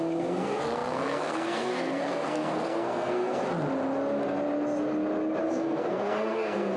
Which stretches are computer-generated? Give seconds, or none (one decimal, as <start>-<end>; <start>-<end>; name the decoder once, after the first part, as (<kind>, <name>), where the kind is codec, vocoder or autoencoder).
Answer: 0.0-3.4 (codec, SNAC); 5.4-6.8